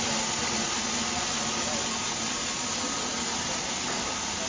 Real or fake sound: real